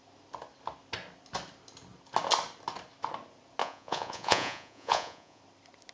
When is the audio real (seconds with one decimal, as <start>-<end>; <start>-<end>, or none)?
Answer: 0.0-3.6; 5.4-5.9